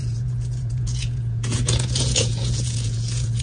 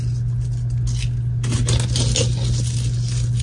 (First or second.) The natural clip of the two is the second